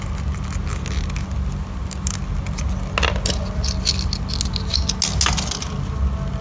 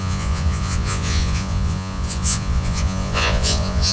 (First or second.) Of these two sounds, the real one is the first